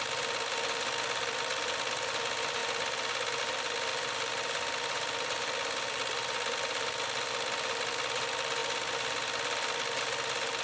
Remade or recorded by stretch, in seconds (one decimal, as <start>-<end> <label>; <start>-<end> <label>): 0.0-3.9 recorded; 3.9-7.3 remade; 7.3-10.6 recorded